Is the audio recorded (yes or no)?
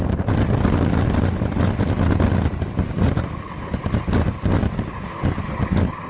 yes